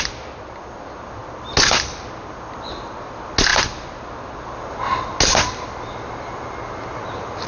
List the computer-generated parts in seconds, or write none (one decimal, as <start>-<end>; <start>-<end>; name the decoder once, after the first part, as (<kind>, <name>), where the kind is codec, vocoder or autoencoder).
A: none